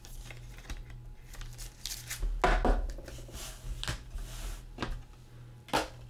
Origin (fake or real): real